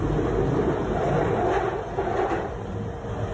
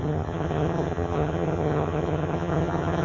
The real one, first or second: first